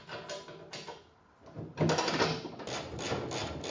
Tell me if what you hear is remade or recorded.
recorded